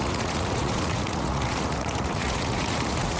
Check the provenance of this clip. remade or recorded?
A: remade